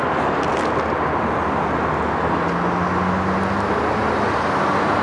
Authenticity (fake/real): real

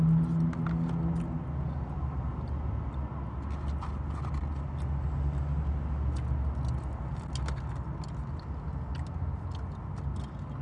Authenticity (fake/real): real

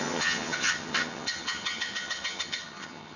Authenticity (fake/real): fake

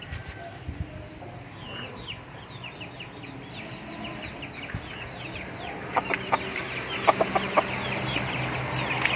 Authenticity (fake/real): real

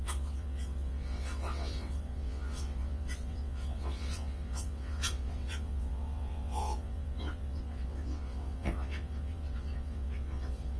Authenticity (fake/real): fake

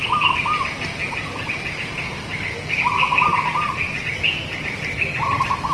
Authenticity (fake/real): fake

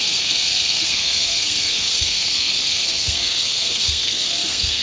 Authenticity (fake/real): fake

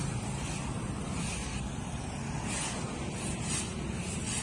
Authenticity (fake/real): real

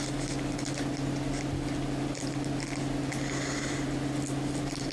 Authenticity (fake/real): real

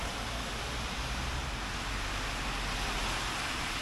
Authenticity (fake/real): real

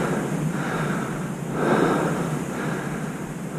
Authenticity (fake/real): real